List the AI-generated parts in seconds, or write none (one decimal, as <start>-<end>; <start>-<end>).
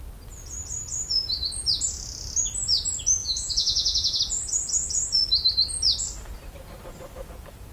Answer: 3.2-4.2